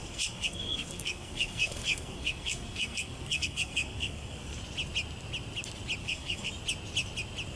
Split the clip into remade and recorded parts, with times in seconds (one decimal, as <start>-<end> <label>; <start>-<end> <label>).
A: 0.0-4.6 remade; 4.6-6.0 recorded; 6.0-6.5 remade; 6.5-7.6 recorded

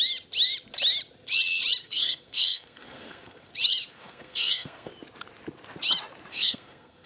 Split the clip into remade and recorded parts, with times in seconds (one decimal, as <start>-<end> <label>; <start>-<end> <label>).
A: 0.0-1.8 recorded; 1.8-3.5 remade; 3.5-3.9 recorded; 3.9-4.9 remade; 4.9-6.3 recorded; 6.3-7.1 remade